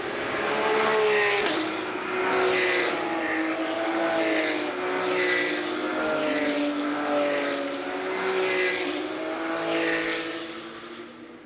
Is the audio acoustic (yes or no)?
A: yes